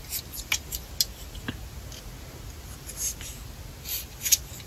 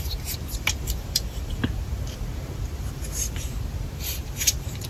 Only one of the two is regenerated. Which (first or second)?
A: second